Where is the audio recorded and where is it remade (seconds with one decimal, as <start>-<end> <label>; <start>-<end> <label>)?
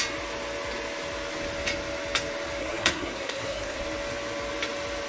0.0-2.6 recorded; 2.6-3.8 remade; 3.8-5.1 recorded